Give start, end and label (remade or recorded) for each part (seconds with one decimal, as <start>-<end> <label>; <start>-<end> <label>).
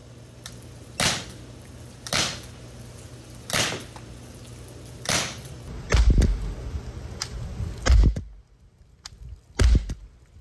0.0-10.4 recorded